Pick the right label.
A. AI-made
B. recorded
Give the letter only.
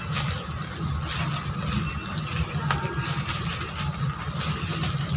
B